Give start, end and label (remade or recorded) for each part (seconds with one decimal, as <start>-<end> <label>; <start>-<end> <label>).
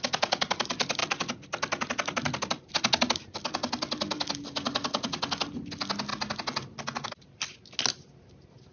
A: 0.0-8.7 recorded